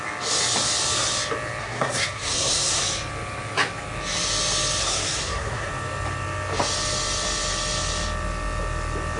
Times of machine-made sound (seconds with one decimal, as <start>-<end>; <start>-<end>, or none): 1.6-2.8; 4.8-5.7